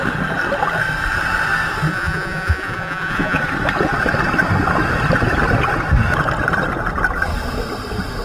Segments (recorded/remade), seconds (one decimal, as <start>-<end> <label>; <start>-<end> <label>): 0.0-1.9 recorded; 1.9-3.4 remade; 3.4-8.2 recorded